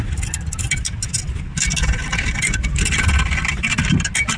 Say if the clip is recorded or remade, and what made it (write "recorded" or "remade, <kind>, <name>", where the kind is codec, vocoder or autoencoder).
recorded